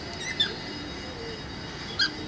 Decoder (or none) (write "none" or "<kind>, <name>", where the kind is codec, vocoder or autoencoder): none